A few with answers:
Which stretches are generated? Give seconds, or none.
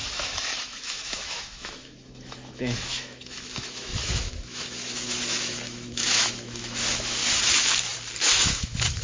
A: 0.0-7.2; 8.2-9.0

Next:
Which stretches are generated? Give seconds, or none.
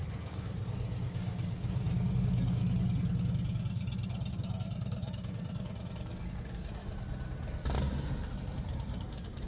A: 0.0-2.6; 4.3-6.8; 8.9-9.5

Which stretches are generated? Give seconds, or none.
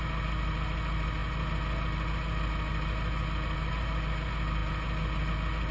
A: none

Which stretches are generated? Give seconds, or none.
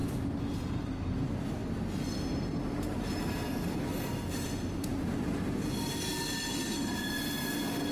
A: none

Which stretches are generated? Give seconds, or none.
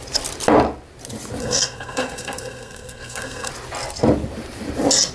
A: 1.4-3.5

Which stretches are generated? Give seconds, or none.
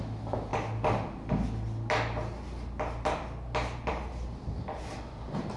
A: none